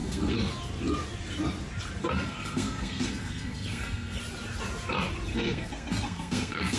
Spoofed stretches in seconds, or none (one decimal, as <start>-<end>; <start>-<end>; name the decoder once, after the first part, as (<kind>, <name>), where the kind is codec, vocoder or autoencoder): 0.0-0.5 (codec, SNAC); 2.0-4.2; 5.3-6.8